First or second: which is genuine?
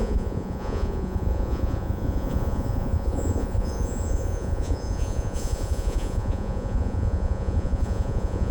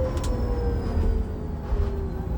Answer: second